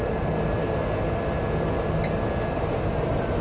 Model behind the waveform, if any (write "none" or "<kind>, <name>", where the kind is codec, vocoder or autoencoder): none